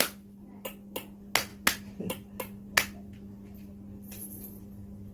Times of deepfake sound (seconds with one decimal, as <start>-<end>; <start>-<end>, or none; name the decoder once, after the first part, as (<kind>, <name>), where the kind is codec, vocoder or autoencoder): none